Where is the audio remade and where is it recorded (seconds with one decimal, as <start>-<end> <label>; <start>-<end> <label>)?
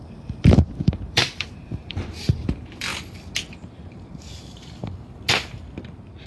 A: 0.0-2.9 remade; 2.9-3.5 recorded; 3.5-4.8 remade; 4.8-6.3 recorded